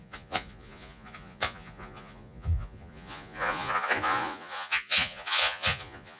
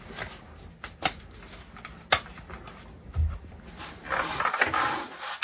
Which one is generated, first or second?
first